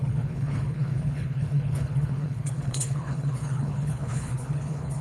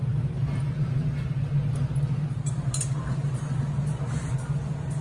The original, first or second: second